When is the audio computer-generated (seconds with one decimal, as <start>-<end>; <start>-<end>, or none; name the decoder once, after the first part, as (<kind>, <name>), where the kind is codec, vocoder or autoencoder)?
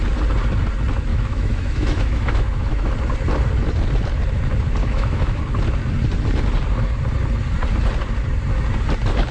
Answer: 1.1-2.9 (autoencoder, DAC-VAE); 4.8-5.4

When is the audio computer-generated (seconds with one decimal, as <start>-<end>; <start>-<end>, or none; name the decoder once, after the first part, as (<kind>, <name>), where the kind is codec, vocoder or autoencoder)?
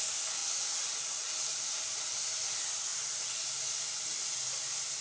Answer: 0.4-1.9 (vocoder, BigVGAN v2); 2.9-3.4